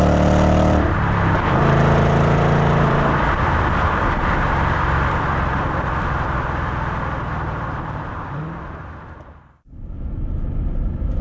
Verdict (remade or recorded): remade